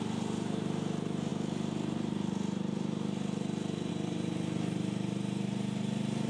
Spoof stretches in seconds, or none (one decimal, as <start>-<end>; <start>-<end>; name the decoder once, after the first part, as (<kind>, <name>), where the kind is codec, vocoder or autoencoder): 0.0-6.3 (vocoder, BigVGAN v2)